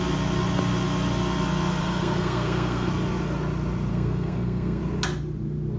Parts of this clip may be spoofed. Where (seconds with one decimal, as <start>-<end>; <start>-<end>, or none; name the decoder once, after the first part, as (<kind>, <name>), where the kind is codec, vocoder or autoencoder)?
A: 1.8-2.9 (codec, SNAC); 3.9-4.8